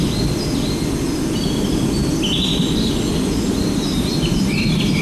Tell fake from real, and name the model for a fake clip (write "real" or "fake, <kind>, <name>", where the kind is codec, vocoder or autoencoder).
real